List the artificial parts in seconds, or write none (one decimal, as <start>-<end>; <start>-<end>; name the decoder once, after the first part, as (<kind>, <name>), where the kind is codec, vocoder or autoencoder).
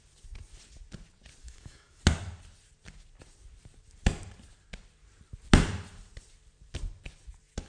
1.4-2.0 (autoencoder, DAC-VAE)